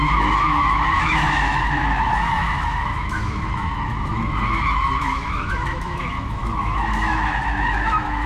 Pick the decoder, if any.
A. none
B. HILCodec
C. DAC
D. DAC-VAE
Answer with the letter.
D